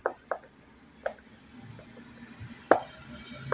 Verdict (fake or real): real